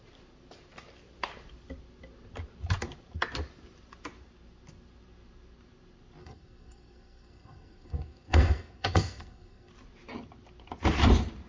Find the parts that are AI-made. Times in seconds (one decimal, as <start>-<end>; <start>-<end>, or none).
6.2-9.7